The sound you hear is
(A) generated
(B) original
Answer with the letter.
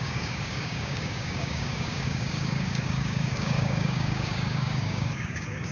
A